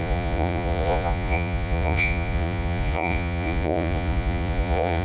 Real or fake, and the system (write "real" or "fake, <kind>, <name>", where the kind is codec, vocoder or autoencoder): fake, vocoder, Vocos